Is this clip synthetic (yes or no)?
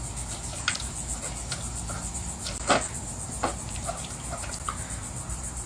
no